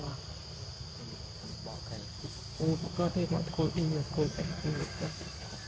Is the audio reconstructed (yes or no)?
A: no